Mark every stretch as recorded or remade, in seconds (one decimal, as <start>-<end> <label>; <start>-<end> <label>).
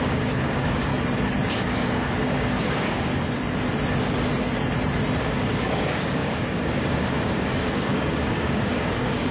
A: 0.0-0.9 remade; 0.9-1.5 recorded; 1.5-3.1 remade; 3.1-5.2 recorded; 5.2-9.3 remade